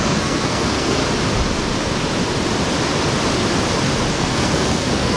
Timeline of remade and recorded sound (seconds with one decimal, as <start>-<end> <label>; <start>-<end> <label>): 0.0-1.0 remade; 1.0-4.1 recorded; 4.1-5.2 remade